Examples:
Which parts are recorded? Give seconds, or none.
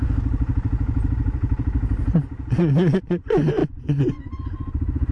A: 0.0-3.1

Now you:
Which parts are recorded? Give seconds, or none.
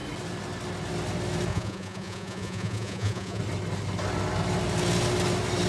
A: 0.0-1.5; 3.4-5.7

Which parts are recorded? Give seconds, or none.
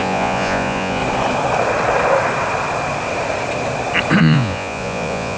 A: 1.0-4.2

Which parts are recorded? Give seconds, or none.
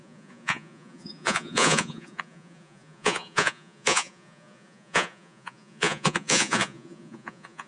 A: none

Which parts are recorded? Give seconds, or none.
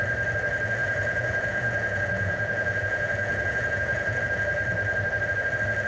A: 0.0-0.8; 4.2-5.9